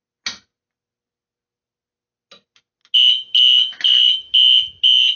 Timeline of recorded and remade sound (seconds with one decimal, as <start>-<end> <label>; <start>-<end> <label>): 0.0-5.2 recorded